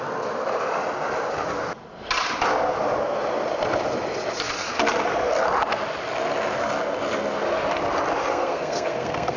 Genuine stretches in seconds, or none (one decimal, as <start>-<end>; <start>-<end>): 0.0-8.3